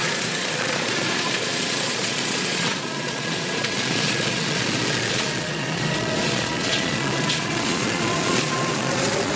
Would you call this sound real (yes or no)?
no